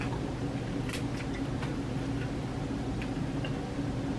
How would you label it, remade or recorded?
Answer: remade